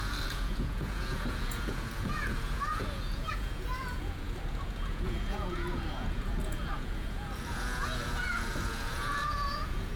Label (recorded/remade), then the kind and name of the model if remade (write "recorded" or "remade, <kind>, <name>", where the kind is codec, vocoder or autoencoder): remade, vocoder, Vocos